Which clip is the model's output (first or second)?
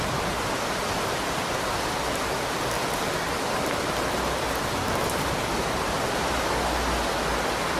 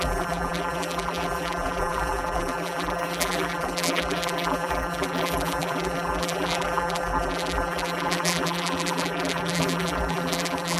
second